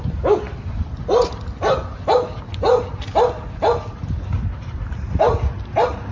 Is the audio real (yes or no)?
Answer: yes